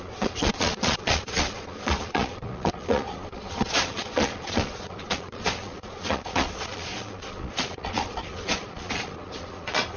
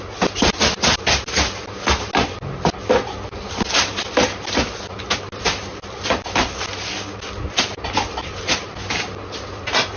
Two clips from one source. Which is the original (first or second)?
second